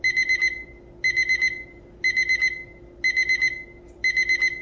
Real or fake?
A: real